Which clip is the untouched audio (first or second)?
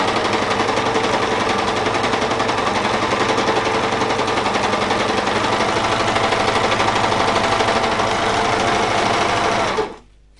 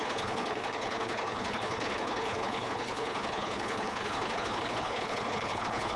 first